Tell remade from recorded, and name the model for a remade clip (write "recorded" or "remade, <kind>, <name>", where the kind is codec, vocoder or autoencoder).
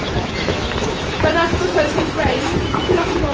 remade, autoencoder, DAC-VAE